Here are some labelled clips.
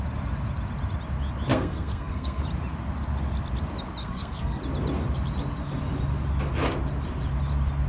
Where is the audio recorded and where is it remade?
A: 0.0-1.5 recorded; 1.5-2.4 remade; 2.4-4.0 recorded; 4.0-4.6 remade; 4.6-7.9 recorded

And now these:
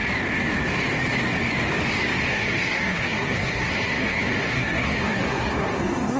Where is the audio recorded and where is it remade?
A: 0.0-2.3 recorded; 2.3-6.2 remade

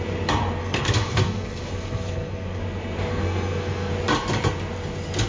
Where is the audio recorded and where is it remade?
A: 0.0-0.6 recorded; 0.6-2.6 remade; 2.6-3.1 recorded; 3.1-3.9 remade; 3.9-5.3 recorded

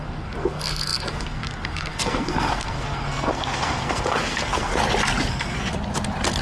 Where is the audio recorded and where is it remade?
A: 0.0-4.7 remade; 4.7-5.3 recorded; 5.3-5.7 remade; 5.7-6.4 recorded